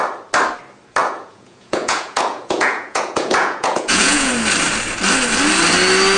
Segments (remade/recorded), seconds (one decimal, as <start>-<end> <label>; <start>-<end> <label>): 0.0-1.0 recorded; 1.0-4.3 remade; 4.3-6.2 recorded

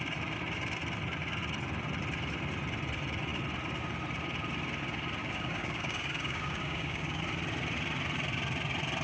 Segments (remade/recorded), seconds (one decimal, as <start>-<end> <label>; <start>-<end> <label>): 0.0-5.2 recorded; 5.2-7.2 remade; 7.2-9.0 recorded